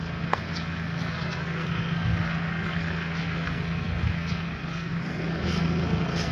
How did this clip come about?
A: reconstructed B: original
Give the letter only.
A